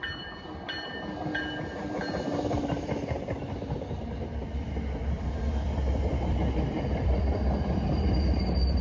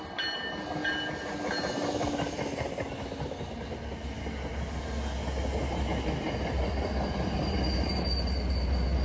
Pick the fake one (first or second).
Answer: first